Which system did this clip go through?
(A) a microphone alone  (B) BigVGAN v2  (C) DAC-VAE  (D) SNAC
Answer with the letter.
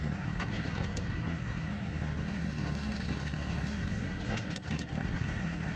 D